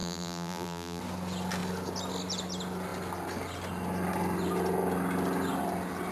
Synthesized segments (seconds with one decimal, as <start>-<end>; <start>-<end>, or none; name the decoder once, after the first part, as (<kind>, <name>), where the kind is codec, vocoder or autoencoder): 0.0-1.0 (vocoder, BigVGAN v2)